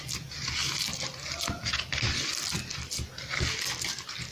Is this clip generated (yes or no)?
no